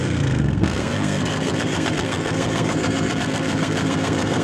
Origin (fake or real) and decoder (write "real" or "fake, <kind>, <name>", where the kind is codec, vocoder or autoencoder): fake, codec, SNAC